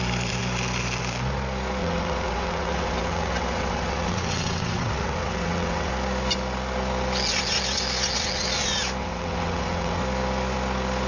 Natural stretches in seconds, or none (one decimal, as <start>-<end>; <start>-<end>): 0.0-1.8; 5.9-9.0; 10.0-11.1